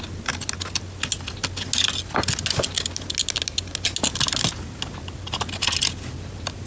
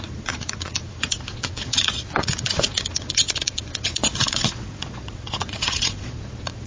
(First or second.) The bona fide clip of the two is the first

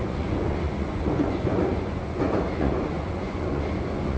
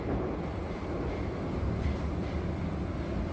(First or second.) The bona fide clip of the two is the second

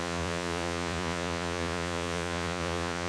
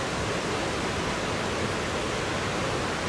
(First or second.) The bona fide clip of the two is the second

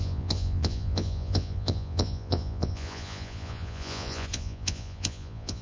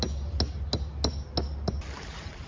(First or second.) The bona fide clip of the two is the second